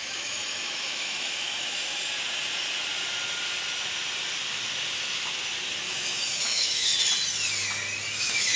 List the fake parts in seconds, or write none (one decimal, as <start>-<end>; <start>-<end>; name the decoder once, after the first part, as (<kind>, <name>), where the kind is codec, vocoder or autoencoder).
0.0-2.0 (autoencoder, DAC-VAE); 5.8-6.9; 8.2-8.6